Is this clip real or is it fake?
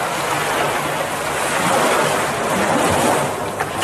real